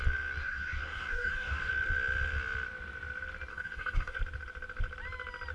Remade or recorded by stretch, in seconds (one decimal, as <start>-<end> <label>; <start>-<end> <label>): 0.0-0.4 recorded; 0.4-1.7 remade; 1.7-3.5 recorded; 3.5-4.2 remade; 4.2-5.5 recorded